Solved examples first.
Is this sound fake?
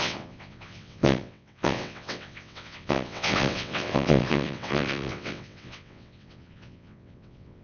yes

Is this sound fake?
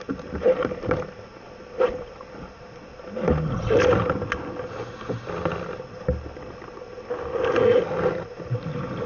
no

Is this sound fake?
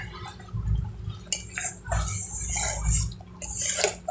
no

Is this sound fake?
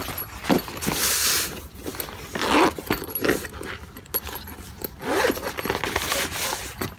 no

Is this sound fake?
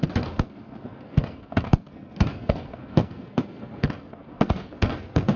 yes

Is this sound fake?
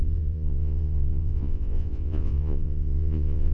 yes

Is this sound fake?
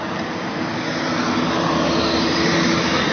no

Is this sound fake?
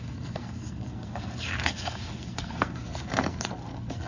yes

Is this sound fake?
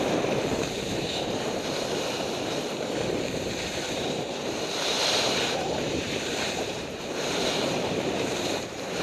yes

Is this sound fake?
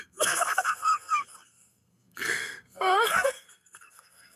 yes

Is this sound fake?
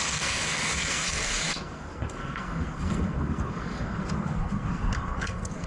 yes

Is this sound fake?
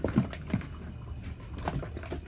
no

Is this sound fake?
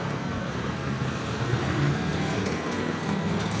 yes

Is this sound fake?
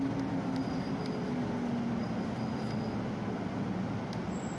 no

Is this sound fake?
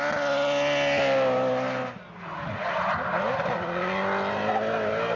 no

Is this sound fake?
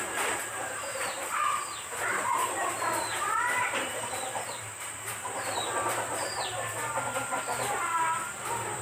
yes